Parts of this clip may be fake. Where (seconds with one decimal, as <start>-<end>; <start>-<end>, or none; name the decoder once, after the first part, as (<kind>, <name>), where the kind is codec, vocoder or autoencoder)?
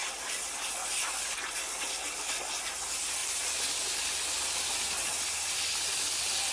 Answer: none